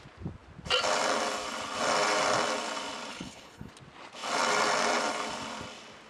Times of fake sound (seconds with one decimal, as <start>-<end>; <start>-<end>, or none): 3.1-3.7